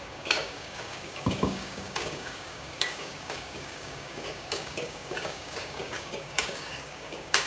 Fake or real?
fake